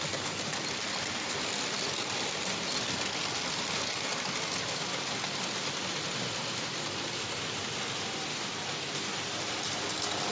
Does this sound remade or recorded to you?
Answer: recorded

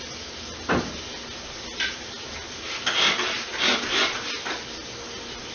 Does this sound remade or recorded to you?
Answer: recorded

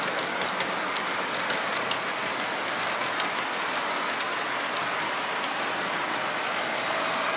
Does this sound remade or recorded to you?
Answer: recorded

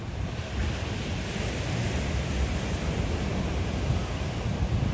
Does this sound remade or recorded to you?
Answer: recorded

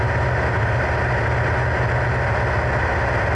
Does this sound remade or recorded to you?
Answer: recorded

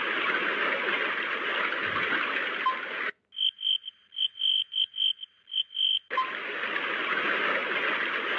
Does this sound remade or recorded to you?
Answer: recorded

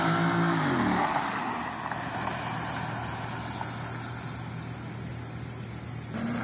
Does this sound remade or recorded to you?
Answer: recorded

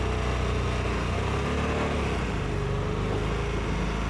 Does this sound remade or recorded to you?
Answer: recorded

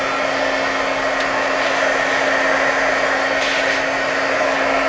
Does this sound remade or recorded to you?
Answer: recorded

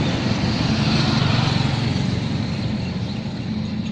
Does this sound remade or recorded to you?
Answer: recorded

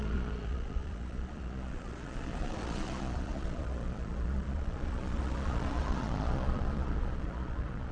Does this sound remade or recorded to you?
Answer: remade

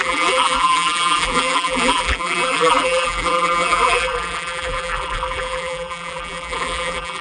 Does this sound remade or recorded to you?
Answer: remade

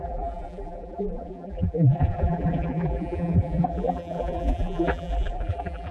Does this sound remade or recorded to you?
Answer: remade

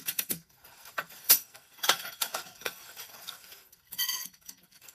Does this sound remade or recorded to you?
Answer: remade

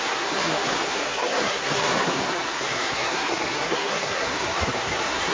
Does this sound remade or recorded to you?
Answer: remade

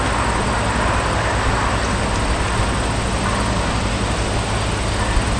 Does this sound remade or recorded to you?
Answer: recorded